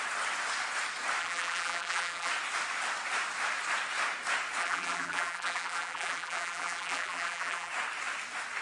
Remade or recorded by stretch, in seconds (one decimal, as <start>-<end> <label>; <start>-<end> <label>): 0.0-1.2 recorded; 1.2-2.3 remade; 2.3-4.6 recorded; 4.6-7.7 remade; 7.7-8.6 recorded